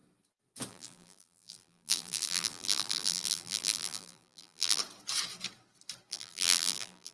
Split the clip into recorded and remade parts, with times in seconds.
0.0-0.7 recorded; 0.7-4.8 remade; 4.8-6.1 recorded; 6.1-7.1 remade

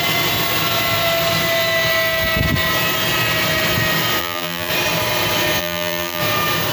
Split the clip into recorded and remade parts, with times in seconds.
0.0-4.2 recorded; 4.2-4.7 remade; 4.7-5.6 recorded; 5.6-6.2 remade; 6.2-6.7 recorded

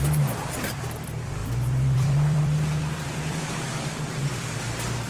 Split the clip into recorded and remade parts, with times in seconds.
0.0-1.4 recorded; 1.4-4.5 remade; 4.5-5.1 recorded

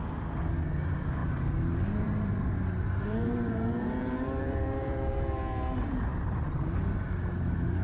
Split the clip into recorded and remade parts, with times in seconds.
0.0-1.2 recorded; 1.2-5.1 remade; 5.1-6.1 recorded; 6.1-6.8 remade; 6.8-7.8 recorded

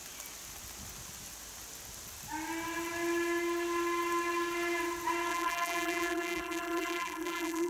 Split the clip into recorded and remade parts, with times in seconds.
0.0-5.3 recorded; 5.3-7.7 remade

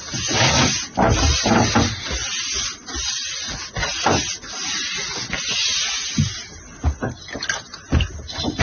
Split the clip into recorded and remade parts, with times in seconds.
0.0-8.6 recorded

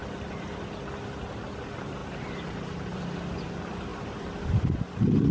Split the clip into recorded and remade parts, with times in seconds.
0.0-2.0 recorded; 2.0-3.0 remade; 3.0-5.3 recorded